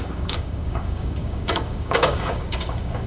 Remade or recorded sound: remade